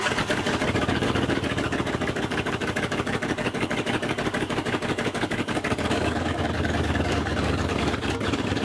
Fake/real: fake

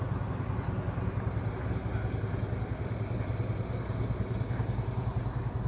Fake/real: real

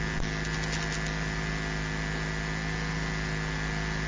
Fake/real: real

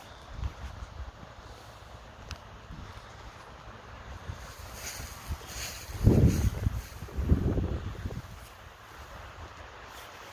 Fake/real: real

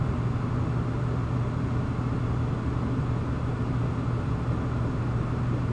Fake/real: real